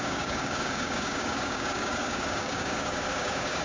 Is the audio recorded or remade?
remade